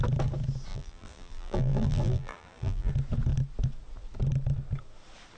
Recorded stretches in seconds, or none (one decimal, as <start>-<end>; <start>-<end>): 0.0-0.7; 2.9-5.4